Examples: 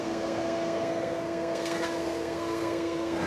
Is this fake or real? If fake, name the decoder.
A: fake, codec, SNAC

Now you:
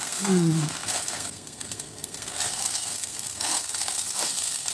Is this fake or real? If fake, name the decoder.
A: fake, codec, SNAC